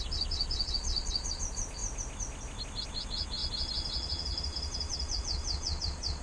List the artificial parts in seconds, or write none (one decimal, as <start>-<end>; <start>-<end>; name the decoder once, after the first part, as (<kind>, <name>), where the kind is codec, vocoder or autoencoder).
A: 0.0-1.8 (vocoder, Vocos); 2.9-3.4; 3.9-6.2